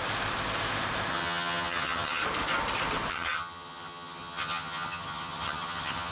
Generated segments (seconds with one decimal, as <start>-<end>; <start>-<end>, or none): 1.1-2.2; 3.1-6.1

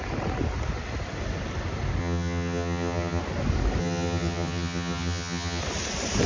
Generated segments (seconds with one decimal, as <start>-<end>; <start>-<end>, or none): 2.0-3.2; 3.8-5.6

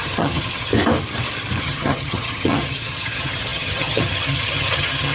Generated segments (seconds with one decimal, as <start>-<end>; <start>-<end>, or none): 0.0-0.7; 1.6-5.1

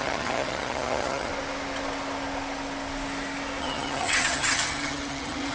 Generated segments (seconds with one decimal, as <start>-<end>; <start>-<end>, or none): 0.0-1.3; 3.6-5.5

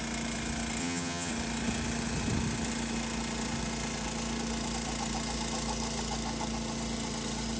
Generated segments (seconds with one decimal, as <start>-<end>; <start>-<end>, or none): 0.8-1.3

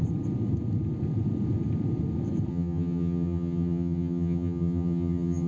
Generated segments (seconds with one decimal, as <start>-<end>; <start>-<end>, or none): 2.5-5.5

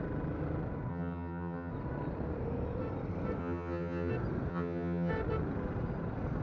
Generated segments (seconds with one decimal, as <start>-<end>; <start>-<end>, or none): 0.9-1.7; 3.4-4.1; 4.5-5.1